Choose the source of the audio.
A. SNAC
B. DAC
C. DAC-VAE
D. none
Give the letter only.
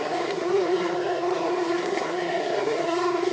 A